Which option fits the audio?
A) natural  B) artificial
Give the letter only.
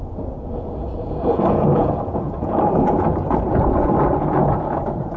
B